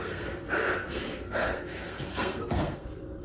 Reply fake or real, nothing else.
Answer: fake